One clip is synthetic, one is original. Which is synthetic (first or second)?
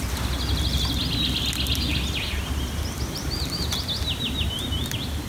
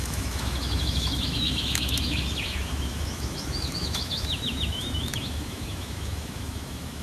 second